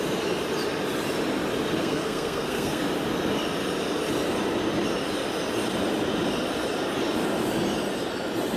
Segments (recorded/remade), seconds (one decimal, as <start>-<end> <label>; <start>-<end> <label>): 0.0-1.8 recorded; 1.8-2.8 remade; 2.8-8.6 recorded